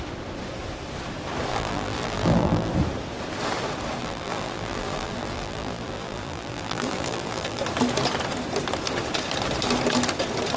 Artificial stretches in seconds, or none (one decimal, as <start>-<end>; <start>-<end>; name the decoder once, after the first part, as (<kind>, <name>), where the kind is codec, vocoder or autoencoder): 1.5-2.7 (vocoder, BigVGAN v2); 4.0-7.6